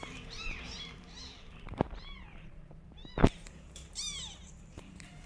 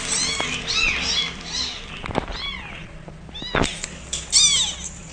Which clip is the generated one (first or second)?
first